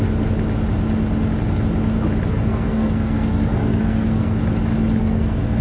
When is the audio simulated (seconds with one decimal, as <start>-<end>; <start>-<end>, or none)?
2.3-4.4; 5.0-5.6

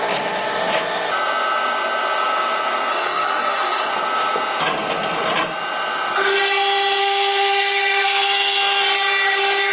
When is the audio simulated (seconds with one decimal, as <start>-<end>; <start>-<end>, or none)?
2.9-3.9; 7.0-8.6

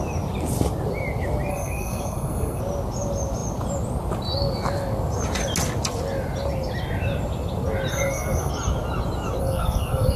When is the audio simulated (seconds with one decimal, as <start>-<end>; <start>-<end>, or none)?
1.5-2.6; 7.9-8.5; 9.4-10.2

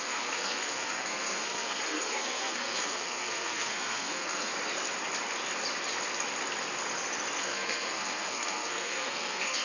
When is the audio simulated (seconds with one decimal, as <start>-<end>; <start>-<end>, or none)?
0.0-4.5; 7.4-9.6

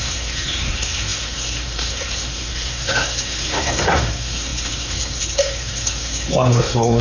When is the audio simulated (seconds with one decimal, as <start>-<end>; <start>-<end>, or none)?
0.0-7.0

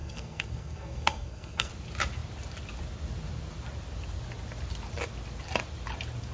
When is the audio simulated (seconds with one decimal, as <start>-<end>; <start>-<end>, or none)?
0.0-1.7

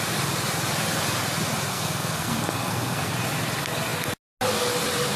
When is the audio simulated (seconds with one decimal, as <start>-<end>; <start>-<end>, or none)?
1.7-3.1